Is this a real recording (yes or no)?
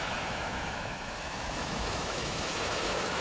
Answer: no